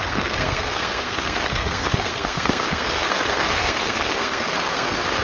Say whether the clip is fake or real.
fake